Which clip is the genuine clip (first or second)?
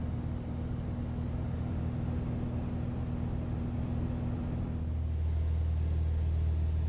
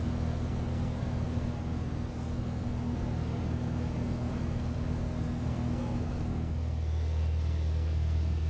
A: first